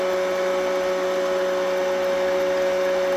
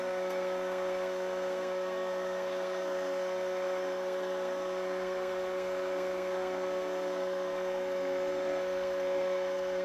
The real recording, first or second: first